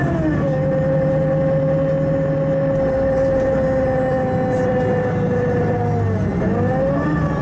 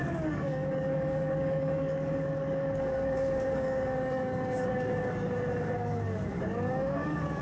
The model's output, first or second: second